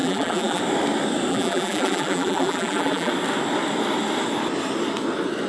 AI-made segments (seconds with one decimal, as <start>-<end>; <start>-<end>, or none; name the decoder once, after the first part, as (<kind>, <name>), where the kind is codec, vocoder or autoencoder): 0.0-0.6 (vocoder, BigVGAN v2); 1.3-3.1